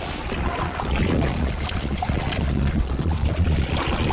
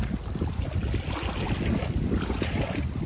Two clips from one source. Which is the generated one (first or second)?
first